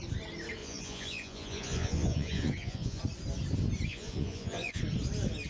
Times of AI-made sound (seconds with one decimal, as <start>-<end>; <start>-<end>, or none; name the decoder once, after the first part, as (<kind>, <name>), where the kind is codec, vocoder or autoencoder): 0.6-3.0 (vocoder, Vocos); 3.9-4.8